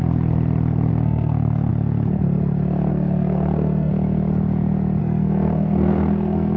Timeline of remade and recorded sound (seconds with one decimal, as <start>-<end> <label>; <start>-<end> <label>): 0.0-0.9 recorded; 0.9-1.7 remade; 1.7-2.9 recorded; 2.9-3.9 remade; 3.9-5.0 recorded; 5.0-6.6 remade